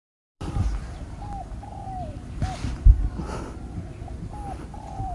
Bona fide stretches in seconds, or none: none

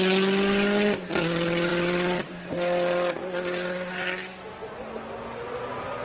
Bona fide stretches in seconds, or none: 0.0-1.7; 3.9-6.0

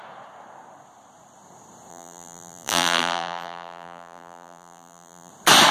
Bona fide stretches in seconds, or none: 0.0-1.9; 5.3-5.7

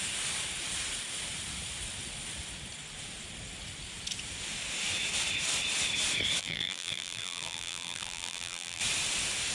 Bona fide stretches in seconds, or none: 0.0-6.4; 8.8-9.5

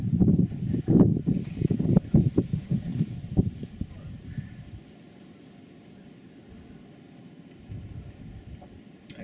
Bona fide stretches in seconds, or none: 0.0-2.9; 5.5-9.2

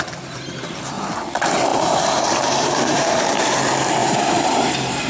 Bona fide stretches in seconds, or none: 0.0-1.7; 3.2-4.0